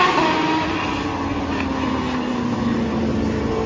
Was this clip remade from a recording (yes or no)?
no